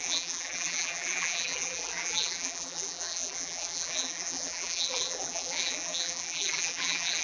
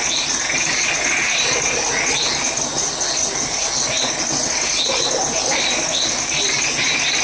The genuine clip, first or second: second